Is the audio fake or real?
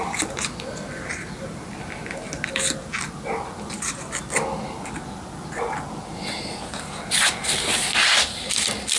real